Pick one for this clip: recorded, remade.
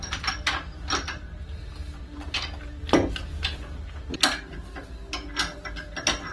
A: recorded